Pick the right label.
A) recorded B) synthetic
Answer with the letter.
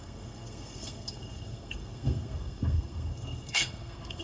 B